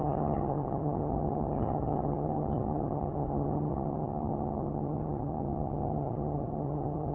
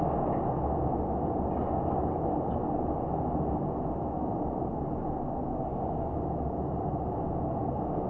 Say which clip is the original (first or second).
second